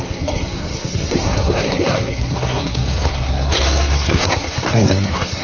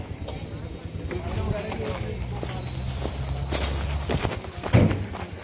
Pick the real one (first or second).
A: second